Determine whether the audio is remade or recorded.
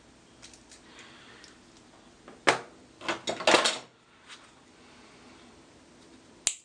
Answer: recorded